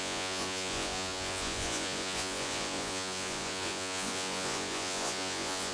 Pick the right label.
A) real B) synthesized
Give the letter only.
B